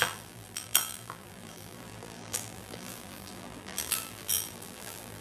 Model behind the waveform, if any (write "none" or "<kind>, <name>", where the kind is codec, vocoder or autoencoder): vocoder, BigVGAN v2